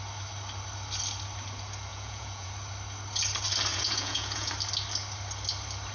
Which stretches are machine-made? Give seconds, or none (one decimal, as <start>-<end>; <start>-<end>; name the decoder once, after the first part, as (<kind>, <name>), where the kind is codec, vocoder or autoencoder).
1.9-2.5 (vocoder, Vocos); 3.7-4.5